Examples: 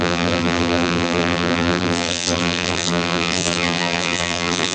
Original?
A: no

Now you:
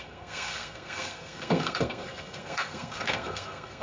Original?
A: no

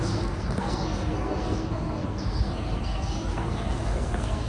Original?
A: no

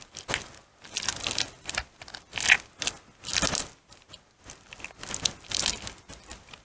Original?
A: yes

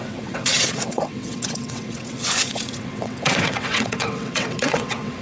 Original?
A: no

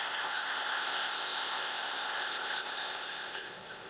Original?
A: no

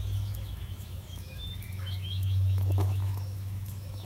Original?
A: no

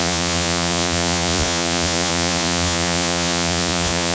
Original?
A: no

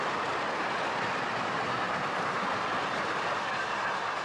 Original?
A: yes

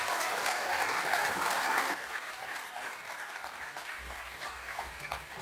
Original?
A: no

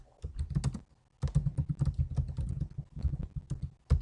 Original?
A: yes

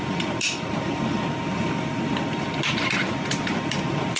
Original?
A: yes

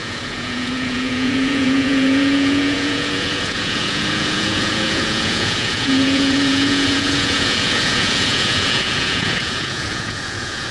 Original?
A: no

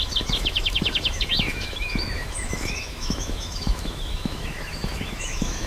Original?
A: no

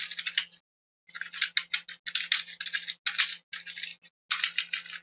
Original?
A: yes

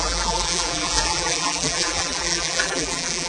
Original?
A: no